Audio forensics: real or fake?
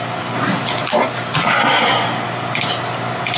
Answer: real